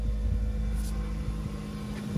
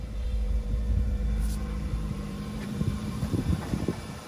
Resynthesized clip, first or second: second